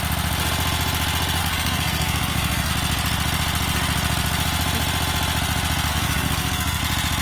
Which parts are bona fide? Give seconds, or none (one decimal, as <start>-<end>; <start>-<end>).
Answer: 0.0-1.4; 2.7-5.9; 6.8-7.2